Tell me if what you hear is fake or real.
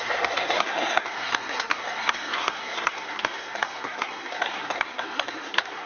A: fake